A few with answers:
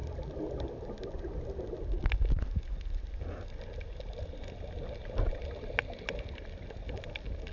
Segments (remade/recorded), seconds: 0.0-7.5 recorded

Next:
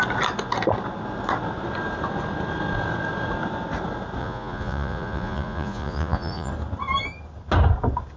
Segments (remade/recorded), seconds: 0.0-4.2 recorded; 4.2-6.5 remade; 6.5-8.2 recorded

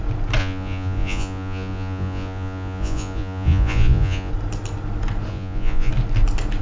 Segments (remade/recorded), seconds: 0.0-0.4 recorded; 0.4-4.3 remade; 4.3-5.3 recorded; 5.3-5.9 remade; 5.9-6.6 recorded